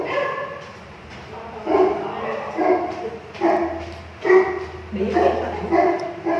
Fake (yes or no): no